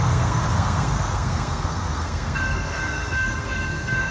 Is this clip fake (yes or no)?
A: yes